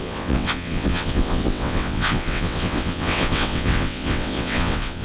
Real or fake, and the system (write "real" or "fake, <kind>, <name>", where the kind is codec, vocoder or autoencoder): fake, vocoder, WaveNeXt